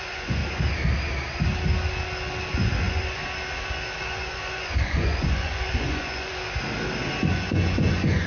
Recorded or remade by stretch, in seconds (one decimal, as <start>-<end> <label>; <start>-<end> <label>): 0.0-0.4 remade; 0.4-2.8 recorded; 2.8-3.2 remade; 3.2-4.0 recorded; 4.0-6.3 remade; 6.3-7.3 recorded; 7.3-8.3 remade